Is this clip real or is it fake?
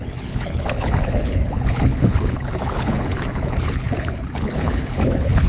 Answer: fake